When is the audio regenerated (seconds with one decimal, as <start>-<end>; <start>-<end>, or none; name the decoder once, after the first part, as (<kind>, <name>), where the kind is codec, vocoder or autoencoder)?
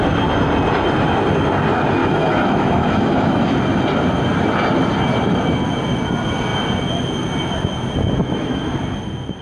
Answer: 2.0-3.6 (autoencoder, DAC-VAE); 8.2-8.8